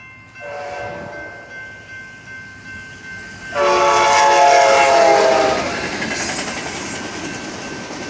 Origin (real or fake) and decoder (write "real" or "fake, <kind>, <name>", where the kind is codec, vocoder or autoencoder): real